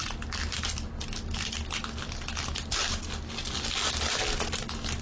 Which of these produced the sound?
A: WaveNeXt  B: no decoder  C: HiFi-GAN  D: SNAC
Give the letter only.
B